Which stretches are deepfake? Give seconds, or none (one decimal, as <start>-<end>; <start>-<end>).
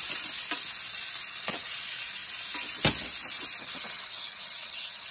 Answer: 1.3-2.2; 3.6-5.1